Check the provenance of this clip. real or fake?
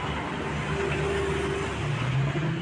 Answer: real